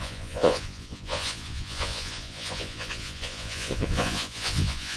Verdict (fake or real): fake